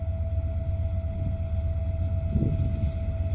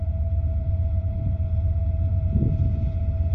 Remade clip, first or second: second